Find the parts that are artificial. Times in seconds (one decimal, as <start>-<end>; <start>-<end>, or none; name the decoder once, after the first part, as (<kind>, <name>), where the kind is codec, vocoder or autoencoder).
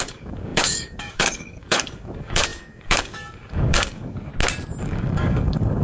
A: 0.0-4.3 (codec, DAC); 4.8-5.8